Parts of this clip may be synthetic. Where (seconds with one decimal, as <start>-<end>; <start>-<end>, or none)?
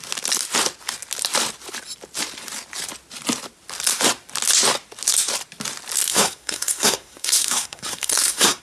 6.1-8.6